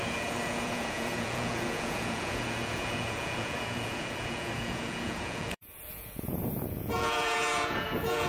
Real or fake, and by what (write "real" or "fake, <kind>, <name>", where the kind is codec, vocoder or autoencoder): fake, vocoder, Vocos